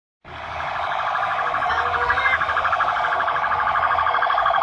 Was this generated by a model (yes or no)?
yes